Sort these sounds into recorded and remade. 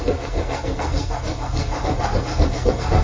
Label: remade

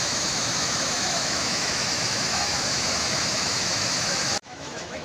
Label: remade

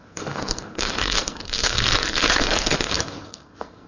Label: remade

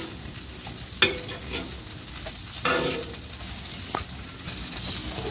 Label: recorded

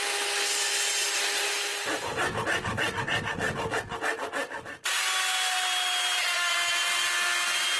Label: recorded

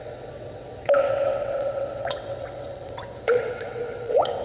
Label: remade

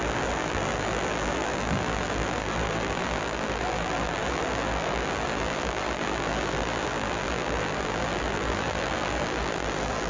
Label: remade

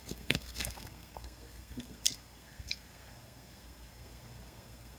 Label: remade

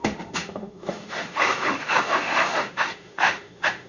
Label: remade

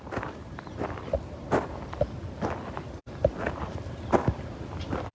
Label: recorded